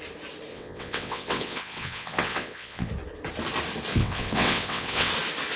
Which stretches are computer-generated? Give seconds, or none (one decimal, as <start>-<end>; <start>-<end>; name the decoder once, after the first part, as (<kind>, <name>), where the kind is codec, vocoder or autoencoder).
0.5-2.9 (vocoder, WaveNeXt); 3.9-5.1